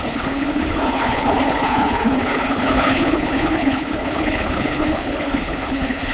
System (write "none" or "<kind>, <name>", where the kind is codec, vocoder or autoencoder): codec, HILCodec